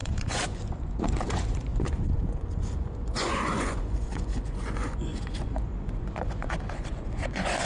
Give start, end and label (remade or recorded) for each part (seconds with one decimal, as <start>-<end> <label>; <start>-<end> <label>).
0.0-7.7 remade